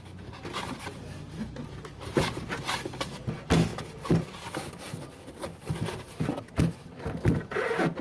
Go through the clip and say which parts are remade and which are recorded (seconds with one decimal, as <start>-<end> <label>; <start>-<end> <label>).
0.0-8.0 recorded